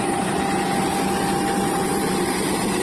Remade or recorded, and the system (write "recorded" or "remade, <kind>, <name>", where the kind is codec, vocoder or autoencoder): recorded